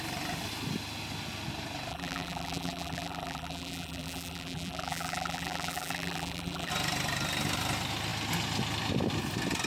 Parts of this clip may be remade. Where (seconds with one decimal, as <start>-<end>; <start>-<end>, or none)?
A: 1.9-6.7